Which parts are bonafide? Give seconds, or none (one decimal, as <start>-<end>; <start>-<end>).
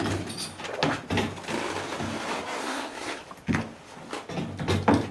0.0-2.6; 3.2-5.1